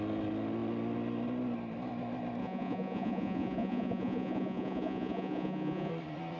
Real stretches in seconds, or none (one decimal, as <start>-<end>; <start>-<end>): 0.0-2.4; 5.9-6.4